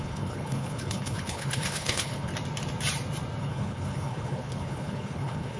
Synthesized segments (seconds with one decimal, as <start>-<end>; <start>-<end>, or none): 0.0-2.3; 3.4-5.6